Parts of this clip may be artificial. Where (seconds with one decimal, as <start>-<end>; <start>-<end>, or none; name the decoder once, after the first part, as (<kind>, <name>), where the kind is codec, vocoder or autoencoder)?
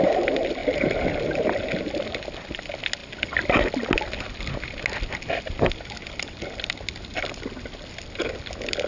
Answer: none